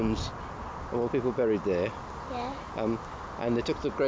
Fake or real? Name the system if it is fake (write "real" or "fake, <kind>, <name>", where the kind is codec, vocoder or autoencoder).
real